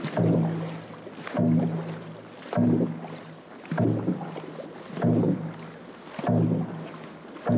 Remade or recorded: recorded